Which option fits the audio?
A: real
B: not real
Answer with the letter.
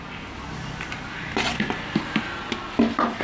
A